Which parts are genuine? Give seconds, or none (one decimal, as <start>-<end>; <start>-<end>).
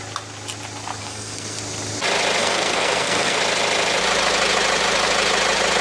0.0-1.0; 1.6-2.4; 3.4-5.8